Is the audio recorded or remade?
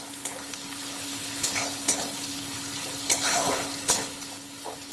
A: remade